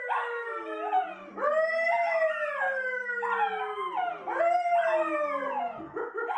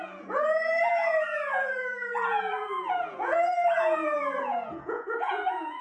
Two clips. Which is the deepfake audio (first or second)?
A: second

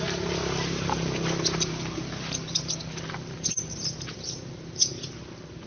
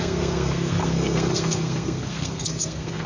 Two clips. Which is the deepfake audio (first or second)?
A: second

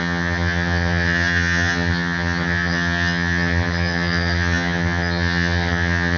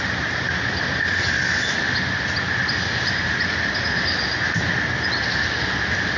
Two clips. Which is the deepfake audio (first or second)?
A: first